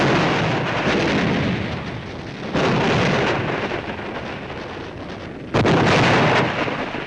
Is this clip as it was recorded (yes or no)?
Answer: yes